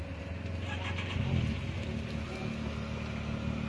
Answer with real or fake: real